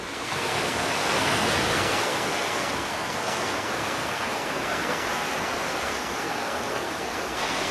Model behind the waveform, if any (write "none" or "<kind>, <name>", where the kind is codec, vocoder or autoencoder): codec, SNAC